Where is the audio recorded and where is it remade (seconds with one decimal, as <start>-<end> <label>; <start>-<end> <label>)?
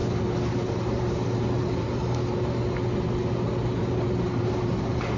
0.0-0.5 recorded; 0.5-2.0 remade; 2.0-3.7 recorded; 3.7-5.2 remade